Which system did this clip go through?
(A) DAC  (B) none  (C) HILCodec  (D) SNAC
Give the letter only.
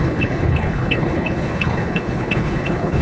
C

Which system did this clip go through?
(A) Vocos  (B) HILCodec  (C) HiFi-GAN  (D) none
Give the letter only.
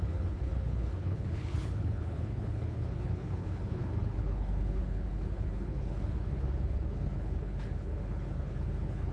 B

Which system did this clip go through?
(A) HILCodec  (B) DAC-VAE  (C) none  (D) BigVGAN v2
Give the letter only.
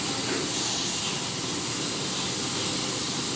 C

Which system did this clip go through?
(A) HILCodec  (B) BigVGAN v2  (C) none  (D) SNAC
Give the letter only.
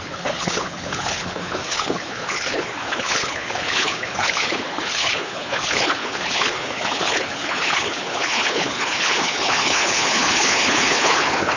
A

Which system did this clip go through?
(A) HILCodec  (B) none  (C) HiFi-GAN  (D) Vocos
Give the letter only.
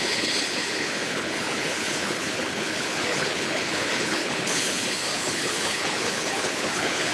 A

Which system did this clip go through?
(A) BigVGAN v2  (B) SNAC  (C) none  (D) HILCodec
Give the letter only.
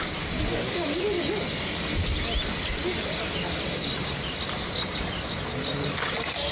C